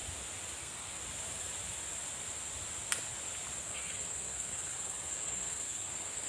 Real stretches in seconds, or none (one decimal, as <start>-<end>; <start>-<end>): 0.0-0.6; 1.0-3.6